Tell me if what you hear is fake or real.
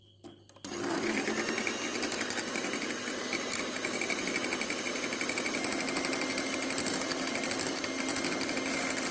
real